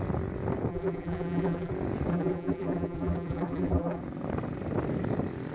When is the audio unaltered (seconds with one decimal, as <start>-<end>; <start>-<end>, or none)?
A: 0.0-0.7; 1.7-2.1; 4.0-5.5